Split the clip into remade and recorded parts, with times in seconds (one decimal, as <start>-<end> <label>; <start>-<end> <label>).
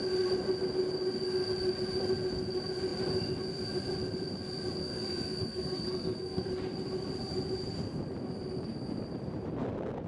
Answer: 0.0-4.8 recorded; 4.8-6.5 remade; 6.5-10.1 recorded